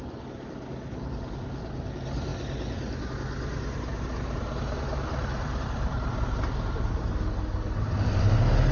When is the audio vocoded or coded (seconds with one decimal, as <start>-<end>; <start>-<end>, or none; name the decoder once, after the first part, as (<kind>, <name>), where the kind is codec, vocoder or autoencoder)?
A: 3.9-7.0 (vocoder, BigVGAN v2)